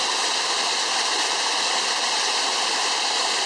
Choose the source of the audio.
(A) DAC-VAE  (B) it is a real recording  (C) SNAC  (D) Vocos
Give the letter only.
B